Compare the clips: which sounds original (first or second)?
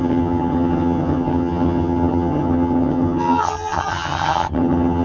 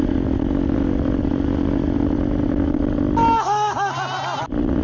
second